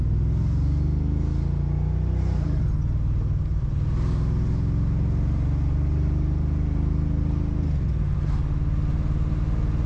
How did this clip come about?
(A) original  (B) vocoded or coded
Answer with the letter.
A